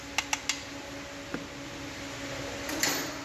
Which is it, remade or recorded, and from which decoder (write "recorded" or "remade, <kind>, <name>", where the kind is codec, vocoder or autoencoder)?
recorded